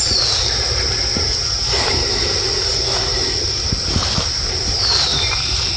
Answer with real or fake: real